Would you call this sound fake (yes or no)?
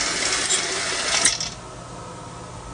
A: no